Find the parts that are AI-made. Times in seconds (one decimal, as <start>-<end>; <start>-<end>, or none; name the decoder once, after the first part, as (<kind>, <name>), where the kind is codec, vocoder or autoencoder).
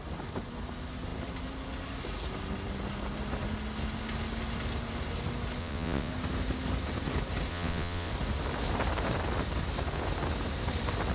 5.6-6.1 (vocoder, WaveNeXt); 7.5-8.1